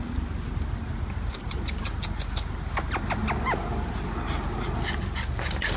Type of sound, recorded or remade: recorded